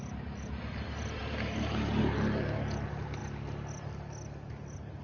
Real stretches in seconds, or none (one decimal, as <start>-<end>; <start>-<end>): 0.0-5.0